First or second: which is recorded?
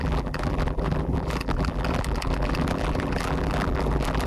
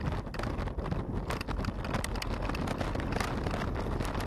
second